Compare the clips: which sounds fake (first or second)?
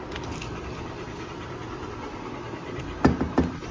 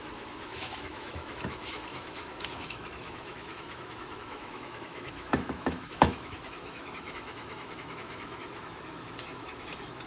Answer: second